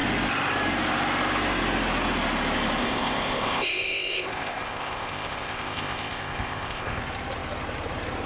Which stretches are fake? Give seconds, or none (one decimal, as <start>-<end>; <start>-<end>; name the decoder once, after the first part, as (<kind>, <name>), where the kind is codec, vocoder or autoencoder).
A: 2.8-7.0 (codec, ZipCodec)